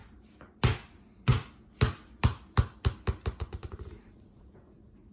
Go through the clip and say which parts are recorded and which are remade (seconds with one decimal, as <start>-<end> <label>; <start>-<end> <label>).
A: 0.0-0.9 recorded; 0.9-1.3 remade; 1.3-3.4 recorded; 3.4-5.1 remade